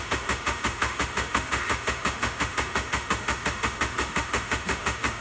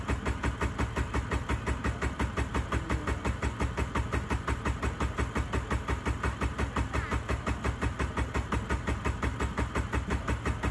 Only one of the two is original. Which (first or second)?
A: second